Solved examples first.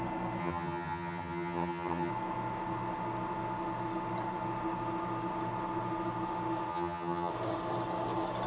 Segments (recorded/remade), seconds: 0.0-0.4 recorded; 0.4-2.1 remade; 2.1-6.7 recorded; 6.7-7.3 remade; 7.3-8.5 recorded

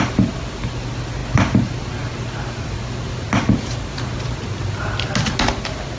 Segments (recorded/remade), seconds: 0.0-6.0 recorded

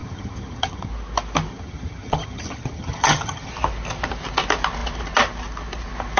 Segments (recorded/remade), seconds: 0.0-0.9 remade; 0.9-1.5 recorded; 1.5-3.5 remade; 3.5-6.2 recorded

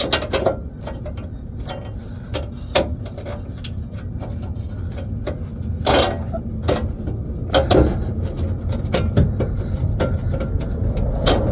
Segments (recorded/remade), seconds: 0.0-11.5 recorded

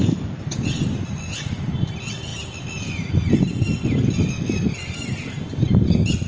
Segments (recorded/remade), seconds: 0.0-6.3 recorded